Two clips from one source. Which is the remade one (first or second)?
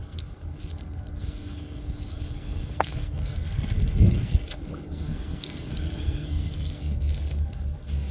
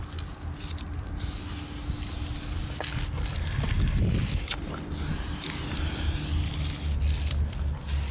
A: first